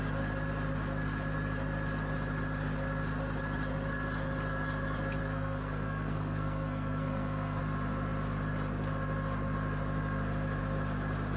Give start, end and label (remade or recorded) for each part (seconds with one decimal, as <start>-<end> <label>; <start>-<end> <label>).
0.0-5.2 recorded; 5.2-7.6 remade; 7.6-11.4 recorded